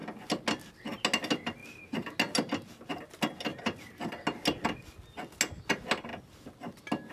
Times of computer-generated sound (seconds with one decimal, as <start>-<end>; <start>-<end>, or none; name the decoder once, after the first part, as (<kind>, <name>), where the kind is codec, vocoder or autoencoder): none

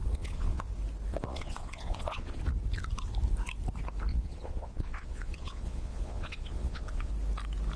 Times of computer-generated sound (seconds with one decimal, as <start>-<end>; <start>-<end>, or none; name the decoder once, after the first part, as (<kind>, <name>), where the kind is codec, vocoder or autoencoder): 0.0-0.7 (vocoder, Vocos); 1.1-2.4; 4.1-7.1

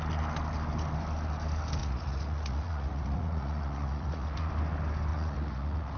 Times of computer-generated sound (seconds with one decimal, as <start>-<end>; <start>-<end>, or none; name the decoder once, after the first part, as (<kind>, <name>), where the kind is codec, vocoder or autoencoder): 1.8-4.5 (vocoder, Vocos); 5.1-6.0

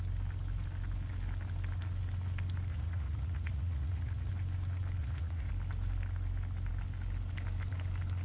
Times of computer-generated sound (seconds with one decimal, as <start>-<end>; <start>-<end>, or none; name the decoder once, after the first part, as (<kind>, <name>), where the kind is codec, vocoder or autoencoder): 2.7-4.3 (vocoder, Vocos); 5.0-5.5